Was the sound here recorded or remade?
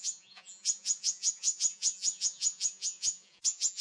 remade